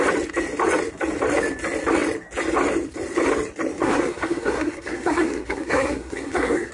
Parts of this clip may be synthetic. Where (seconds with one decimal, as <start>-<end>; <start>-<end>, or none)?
3.8-6.7